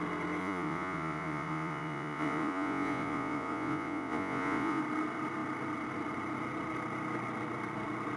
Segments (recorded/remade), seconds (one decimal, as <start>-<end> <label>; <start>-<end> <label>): 0.0-0.4 recorded; 0.4-4.8 remade; 4.8-8.2 recorded